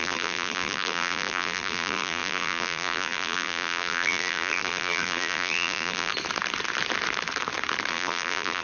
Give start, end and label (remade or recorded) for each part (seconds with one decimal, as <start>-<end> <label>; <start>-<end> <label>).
0.0-6.1 remade; 6.1-7.9 recorded; 7.9-8.6 remade